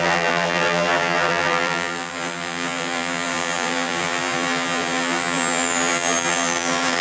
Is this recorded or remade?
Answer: remade